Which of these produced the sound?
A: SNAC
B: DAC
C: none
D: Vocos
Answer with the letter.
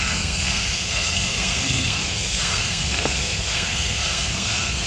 A